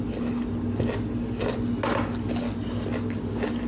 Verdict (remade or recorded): recorded